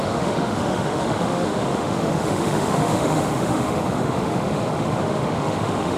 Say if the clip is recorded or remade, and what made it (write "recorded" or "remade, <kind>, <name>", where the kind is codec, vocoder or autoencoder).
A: remade, autoencoder, DAC-VAE